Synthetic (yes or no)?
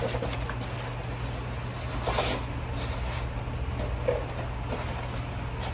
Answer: no